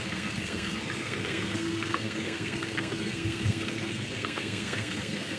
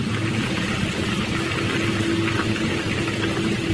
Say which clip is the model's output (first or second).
first